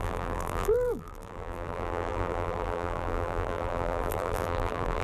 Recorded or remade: remade